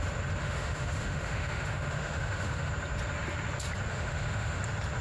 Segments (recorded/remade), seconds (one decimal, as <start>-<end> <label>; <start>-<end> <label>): 0.0-0.4 recorded; 0.4-2.7 remade; 2.7-3.9 recorded; 3.9-4.6 remade; 4.6-5.0 recorded